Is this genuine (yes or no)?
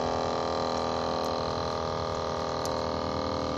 yes